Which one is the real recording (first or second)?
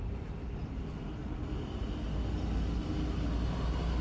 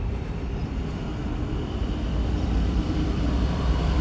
first